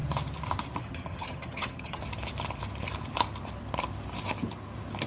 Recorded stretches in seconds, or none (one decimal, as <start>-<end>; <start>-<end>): 0.0-0.8; 2.0-5.1